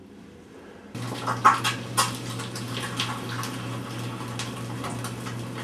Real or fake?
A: real